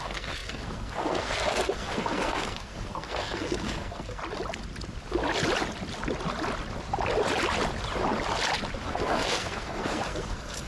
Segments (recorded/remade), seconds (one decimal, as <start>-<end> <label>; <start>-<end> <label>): 0.0-4.2 remade; 4.2-8.9 recorded; 8.9-10.7 remade